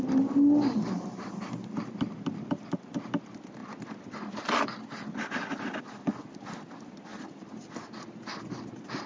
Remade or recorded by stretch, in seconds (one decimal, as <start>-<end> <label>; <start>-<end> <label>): 0.0-9.1 recorded